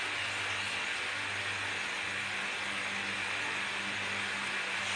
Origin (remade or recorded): recorded